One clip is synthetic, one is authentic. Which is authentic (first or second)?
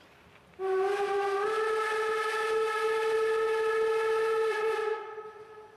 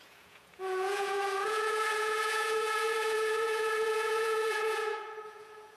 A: first